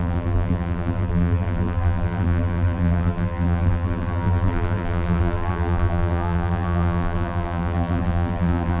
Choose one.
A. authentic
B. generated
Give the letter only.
B